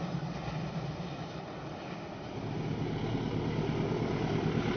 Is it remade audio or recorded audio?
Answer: recorded